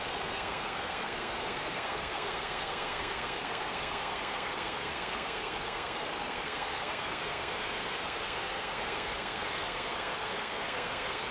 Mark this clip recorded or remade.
remade